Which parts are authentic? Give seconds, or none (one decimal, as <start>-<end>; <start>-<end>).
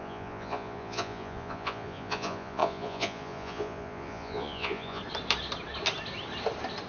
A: 5.0-6.9